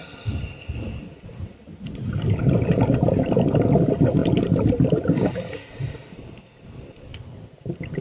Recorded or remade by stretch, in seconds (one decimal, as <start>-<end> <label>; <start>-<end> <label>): 0.0-8.0 recorded